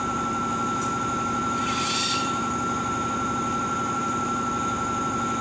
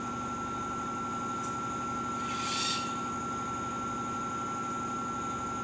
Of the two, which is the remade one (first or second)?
first